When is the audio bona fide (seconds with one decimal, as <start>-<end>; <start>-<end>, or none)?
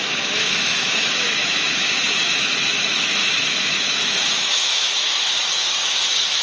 none